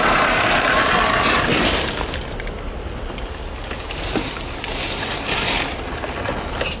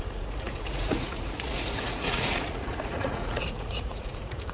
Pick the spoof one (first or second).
second